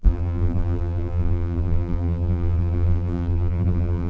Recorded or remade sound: remade